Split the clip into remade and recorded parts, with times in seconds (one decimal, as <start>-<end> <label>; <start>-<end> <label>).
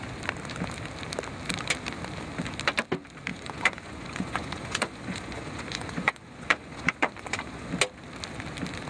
0.0-3.3 recorded; 3.3-7.7 remade; 7.7-8.9 recorded